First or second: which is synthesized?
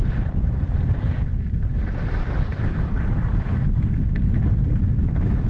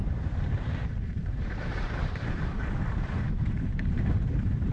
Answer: second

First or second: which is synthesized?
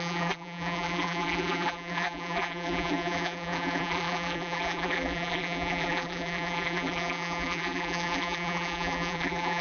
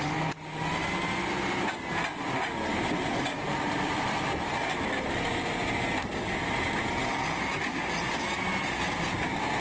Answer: first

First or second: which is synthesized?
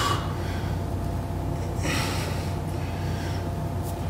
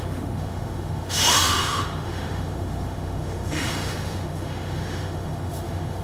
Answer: second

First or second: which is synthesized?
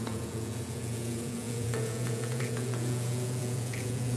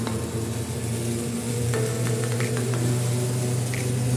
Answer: first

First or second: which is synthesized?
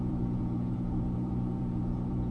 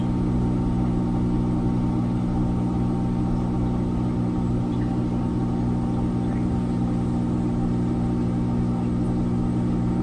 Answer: first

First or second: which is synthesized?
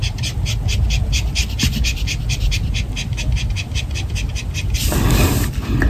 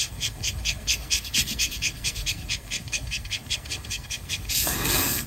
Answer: second